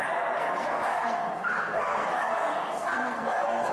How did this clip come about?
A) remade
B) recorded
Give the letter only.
A